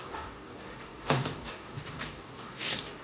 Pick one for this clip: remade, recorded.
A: remade